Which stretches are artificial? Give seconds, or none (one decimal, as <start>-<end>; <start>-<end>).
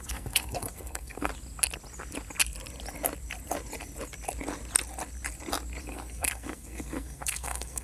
0.0-1.3; 5.8-7.8